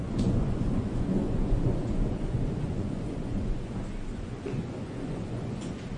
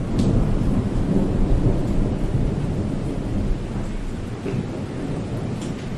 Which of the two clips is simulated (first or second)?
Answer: first